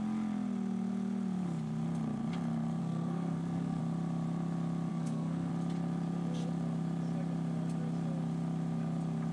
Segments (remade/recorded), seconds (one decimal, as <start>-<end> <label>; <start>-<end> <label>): 0.0-2.8 recorded; 2.8-3.8 remade; 3.8-4.9 recorded; 4.9-5.5 remade; 5.5-9.3 recorded

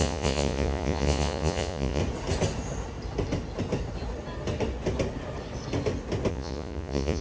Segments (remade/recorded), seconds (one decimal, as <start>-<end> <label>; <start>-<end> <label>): 0.0-2.0 remade; 2.0-6.3 recorded; 6.3-7.2 remade

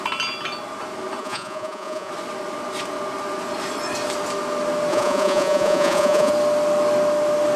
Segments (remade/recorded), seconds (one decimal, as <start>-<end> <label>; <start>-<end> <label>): 0.0-1.2 recorded; 1.2-2.1 remade; 2.1-4.9 recorded; 4.9-6.3 remade; 6.3-7.6 recorded

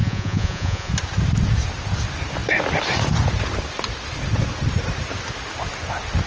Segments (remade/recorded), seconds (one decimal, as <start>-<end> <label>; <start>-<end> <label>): 0.0-0.9 remade; 0.9-6.3 recorded

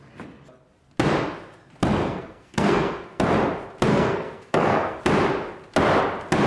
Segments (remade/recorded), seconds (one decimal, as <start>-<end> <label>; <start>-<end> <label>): 0.0-2.0 recorded; 2.0-3.2 remade; 3.2-3.9 recorded; 3.9-5.0 remade; 5.0-6.5 recorded

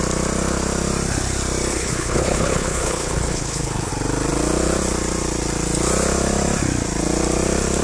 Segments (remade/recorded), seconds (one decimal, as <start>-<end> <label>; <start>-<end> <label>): 0.0-1.7 recorded; 1.7-3.9 remade; 3.9-7.8 recorded